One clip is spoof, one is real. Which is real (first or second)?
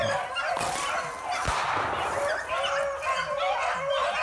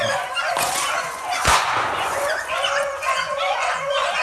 first